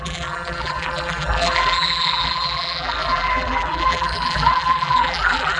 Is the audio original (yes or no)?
no